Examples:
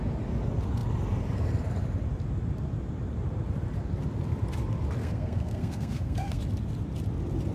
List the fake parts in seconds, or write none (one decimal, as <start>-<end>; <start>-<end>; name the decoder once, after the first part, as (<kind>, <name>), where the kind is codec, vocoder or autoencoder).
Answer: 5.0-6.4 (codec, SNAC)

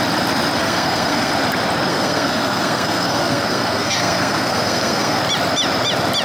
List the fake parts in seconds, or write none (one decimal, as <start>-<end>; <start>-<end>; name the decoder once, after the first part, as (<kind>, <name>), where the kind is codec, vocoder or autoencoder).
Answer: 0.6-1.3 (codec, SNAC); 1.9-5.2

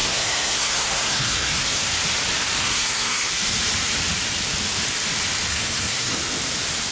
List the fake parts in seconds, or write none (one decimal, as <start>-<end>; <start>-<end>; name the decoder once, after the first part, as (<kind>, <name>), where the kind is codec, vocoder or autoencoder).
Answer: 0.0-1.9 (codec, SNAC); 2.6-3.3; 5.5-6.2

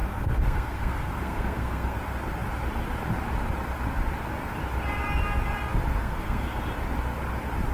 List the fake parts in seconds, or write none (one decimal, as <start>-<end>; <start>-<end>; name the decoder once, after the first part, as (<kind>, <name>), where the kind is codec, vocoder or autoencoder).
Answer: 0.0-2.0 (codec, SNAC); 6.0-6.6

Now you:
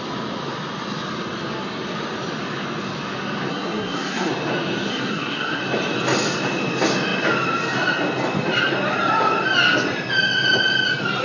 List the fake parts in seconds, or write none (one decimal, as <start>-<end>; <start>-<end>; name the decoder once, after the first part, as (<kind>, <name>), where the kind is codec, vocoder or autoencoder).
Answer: 3.5-4.3 (codec, SNAC); 4.9-5.6

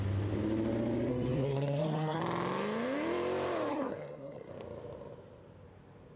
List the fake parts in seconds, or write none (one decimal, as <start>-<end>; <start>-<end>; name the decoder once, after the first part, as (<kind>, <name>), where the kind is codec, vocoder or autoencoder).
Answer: 1.1-2.2 (codec, SNAC); 3.7-4.5